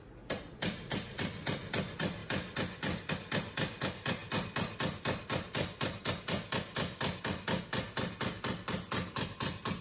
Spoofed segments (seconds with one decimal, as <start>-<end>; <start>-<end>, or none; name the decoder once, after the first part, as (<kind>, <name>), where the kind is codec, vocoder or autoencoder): none